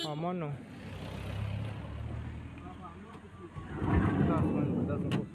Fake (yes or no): no